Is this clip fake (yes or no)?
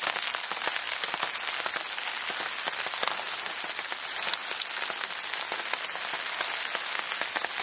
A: no